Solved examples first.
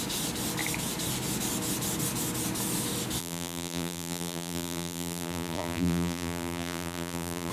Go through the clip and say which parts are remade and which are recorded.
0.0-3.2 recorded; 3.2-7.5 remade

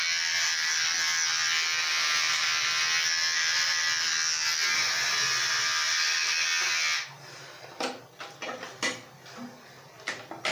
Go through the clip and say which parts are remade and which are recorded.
0.0-10.5 recorded

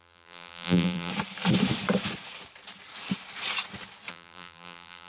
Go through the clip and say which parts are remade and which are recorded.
0.0-1.1 remade; 1.1-4.1 recorded; 4.1-5.1 remade

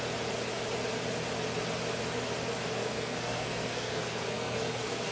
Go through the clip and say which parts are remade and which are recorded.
0.0-2.8 recorded; 2.8-5.1 remade

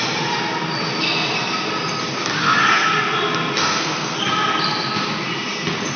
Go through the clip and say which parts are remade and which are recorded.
0.0-2.4 recorded; 2.4-2.9 remade; 2.9-3.6 recorded; 3.6-4.2 remade; 4.2-6.0 recorded